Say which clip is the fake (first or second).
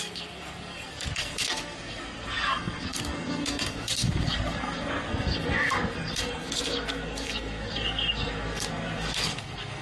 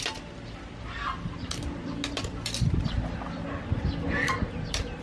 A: first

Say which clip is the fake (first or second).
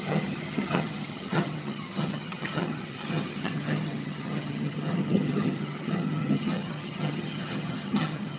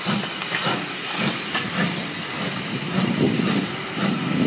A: first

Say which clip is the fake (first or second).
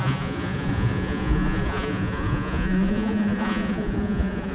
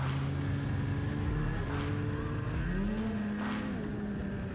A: first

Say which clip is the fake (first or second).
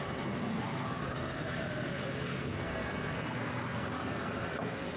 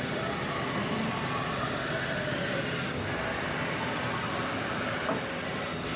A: first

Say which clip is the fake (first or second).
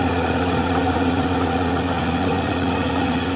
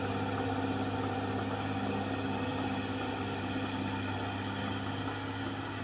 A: first